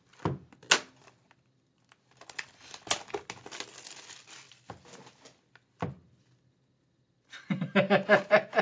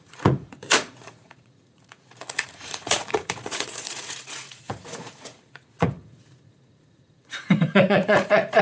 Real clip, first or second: first